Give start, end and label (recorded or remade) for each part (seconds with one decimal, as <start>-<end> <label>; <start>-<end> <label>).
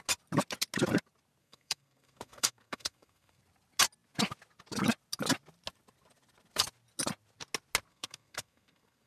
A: 0.0-1.4 recorded; 1.4-3.4 remade; 3.4-7.9 recorded; 7.9-9.1 remade